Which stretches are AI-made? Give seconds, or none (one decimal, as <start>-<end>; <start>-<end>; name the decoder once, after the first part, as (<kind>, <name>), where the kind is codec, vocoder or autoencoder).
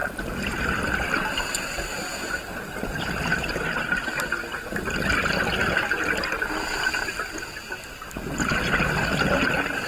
none